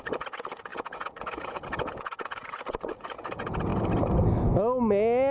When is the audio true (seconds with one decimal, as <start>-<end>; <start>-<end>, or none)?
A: 3.7-5.3